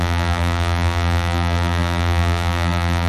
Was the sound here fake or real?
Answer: fake